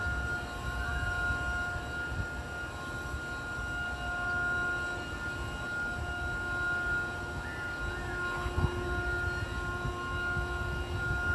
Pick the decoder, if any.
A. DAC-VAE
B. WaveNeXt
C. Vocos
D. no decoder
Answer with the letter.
D